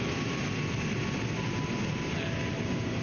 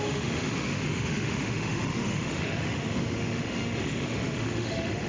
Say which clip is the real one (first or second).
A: first